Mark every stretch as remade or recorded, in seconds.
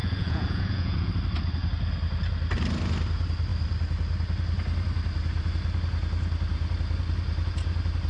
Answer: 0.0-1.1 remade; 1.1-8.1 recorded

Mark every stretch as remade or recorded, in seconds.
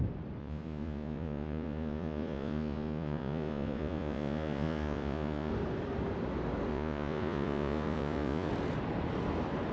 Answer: 0.0-0.4 recorded; 0.4-5.5 remade; 5.5-6.7 recorded; 6.7-8.5 remade; 8.5-9.7 recorded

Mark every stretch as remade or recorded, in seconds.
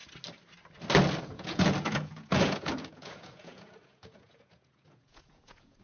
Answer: 0.0-1.2 recorded; 1.2-5.8 remade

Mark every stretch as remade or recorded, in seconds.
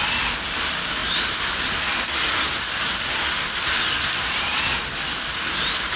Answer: 0.0-6.0 recorded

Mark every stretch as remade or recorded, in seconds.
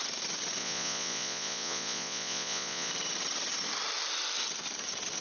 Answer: 0.0-0.6 recorded; 0.6-2.9 remade; 2.9-5.2 recorded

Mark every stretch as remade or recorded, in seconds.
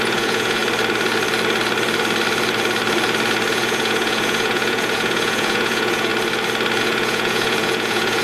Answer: 0.0-0.6 remade; 0.6-3.5 recorded; 3.5-6.1 remade; 6.1-6.8 recorded; 6.8-8.2 remade